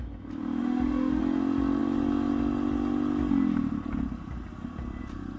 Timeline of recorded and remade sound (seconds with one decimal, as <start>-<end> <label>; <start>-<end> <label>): 0.0-0.6 recorded; 0.6-1.2 remade; 1.2-5.4 recorded

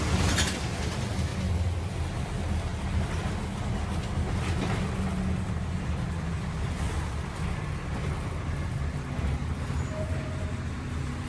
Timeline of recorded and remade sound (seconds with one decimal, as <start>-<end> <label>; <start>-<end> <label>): 0.0-11.3 recorded

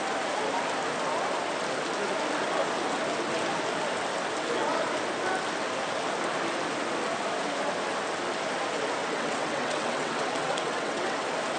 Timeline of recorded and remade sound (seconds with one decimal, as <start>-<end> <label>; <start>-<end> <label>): 0.0-9.0 recorded; 9.0-11.2 remade; 11.2-11.6 recorded

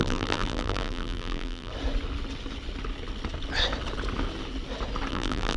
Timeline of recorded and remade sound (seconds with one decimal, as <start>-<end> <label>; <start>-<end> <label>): 0.0-1.7 remade; 1.7-5.1 recorded; 5.1-5.6 remade

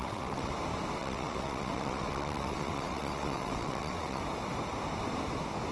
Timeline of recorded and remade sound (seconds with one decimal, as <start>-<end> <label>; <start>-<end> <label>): 0.0-0.5 remade; 0.5-1.0 recorded; 1.0-4.2 remade; 4.2-5.7 recorded

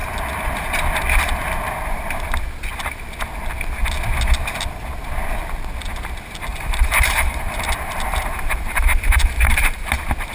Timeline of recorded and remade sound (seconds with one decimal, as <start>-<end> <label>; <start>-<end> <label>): 0.0-6.5 recorded; 6.5-9.9 remade; 9.9-10.3 recorded